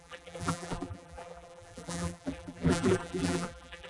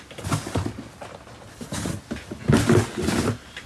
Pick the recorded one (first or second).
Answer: second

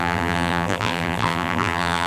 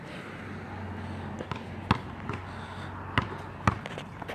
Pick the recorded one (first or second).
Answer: second